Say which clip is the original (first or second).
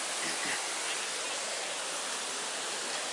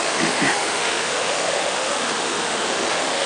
first